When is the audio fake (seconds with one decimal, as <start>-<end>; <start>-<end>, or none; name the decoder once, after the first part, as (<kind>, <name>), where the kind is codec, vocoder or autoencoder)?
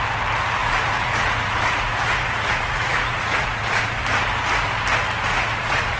0.6-4.0 (vocoder, Vocos); 5.3-6.0